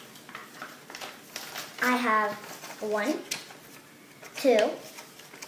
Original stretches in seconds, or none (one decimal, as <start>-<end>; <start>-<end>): 0.0-5.5